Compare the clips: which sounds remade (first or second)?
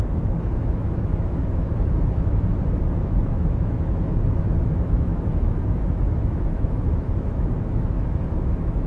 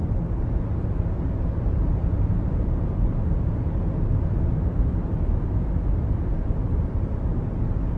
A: first